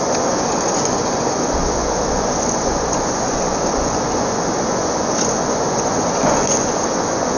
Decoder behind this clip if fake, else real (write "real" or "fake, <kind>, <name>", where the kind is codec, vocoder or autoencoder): fake, vocoder, Vocos